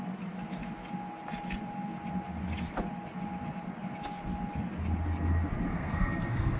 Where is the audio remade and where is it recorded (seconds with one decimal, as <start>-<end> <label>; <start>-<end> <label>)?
0.0-5.7 recorded; 5.7-6.6 remade